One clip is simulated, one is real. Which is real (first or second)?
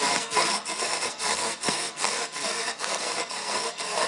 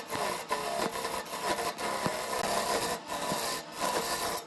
second